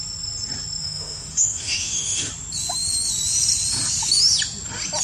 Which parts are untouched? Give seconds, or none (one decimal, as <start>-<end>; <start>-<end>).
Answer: 0.0-0.8; 2.3-5.0